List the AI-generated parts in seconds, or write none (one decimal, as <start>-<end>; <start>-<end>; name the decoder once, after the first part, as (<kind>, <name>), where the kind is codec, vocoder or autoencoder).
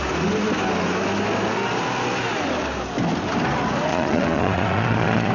3.9-5.3 (vocoder, Vocos)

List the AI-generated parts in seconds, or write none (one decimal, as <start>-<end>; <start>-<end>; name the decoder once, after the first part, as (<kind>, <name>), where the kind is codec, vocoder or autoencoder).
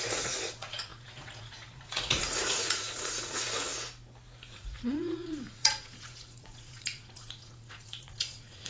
0.0-3.7 (vocoder, Vocos); 4.5-8.7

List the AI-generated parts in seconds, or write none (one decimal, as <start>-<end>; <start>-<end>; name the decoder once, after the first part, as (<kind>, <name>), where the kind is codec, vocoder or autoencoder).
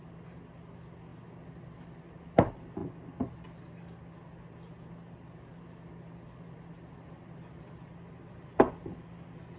none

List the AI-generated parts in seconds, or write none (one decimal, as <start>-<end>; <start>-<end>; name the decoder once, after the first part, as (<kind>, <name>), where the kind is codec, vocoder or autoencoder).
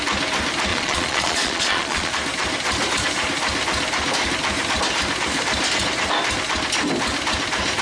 0.7-2.1 (vocoder, Vocos)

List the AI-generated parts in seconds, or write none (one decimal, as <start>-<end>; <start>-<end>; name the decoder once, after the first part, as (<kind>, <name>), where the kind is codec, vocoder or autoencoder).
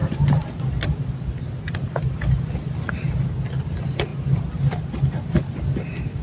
none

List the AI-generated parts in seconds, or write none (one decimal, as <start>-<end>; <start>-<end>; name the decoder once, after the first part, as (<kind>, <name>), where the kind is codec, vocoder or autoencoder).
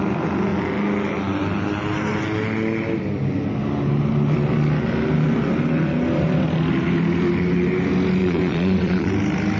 8.2-9.1 (vocoder, Vocos)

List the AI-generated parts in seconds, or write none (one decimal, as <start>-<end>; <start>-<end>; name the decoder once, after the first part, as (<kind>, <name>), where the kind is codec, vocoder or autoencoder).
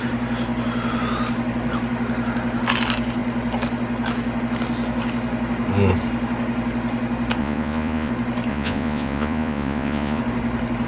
7.4-8.1 (vocoder, Vocos); 8.5-10.2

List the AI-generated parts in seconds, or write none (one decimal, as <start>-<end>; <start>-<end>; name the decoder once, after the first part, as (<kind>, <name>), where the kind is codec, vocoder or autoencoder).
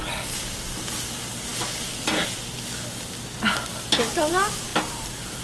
none